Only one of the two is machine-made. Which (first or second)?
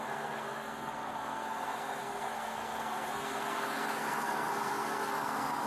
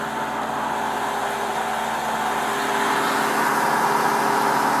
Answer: first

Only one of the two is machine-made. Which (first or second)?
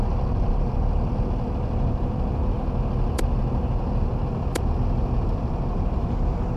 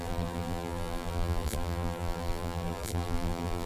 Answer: second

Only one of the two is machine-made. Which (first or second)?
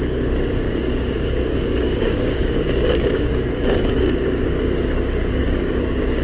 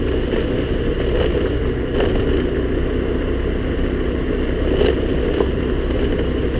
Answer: first